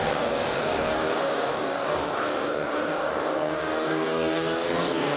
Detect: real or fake fake